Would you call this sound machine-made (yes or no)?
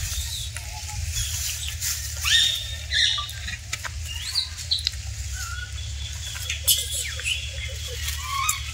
no